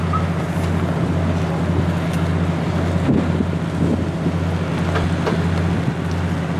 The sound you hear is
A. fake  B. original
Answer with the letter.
B